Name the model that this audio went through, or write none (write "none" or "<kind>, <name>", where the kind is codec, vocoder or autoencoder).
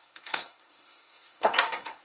codec, SNAC